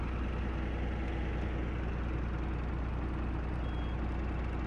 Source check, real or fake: real